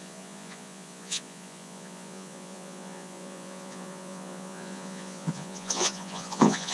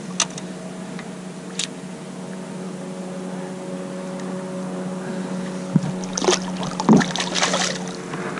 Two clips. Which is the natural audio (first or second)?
second